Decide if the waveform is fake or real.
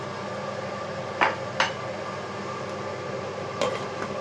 real